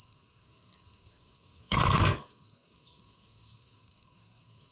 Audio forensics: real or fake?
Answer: fake